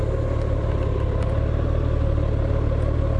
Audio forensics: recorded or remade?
recorded